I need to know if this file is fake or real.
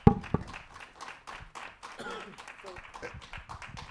real